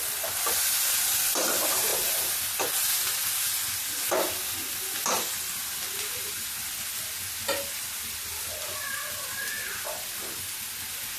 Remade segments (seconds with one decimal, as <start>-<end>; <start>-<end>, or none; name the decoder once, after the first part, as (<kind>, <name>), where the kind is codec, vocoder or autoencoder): none